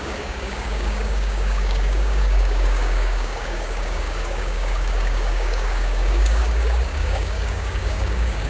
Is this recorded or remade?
remade